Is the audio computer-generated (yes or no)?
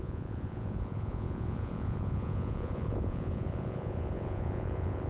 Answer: yes